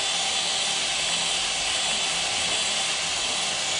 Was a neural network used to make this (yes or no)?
no